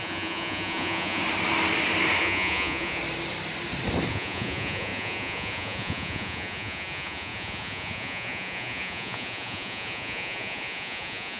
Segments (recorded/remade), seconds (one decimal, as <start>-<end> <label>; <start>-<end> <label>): 0.0-1.2 remade; 1.2-2.2 recorded; 2.2-3.0 remade; 3.0-4.1 recorded; 4.1-11.4 remade